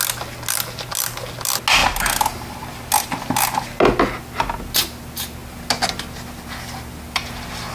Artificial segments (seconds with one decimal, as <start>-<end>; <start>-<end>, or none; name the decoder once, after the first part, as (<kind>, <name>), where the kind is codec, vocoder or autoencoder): none